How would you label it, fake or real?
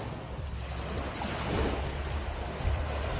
real